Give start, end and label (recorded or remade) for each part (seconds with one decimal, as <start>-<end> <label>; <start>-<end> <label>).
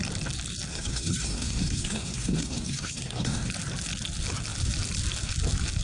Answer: 0.0-0.7 recorded; 0.7-3.5 remade; 3.5-5.8 recorded